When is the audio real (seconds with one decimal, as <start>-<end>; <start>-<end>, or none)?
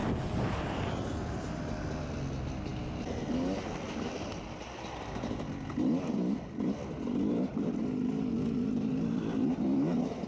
0.0-10.3